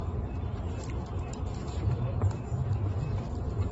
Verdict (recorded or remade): recorded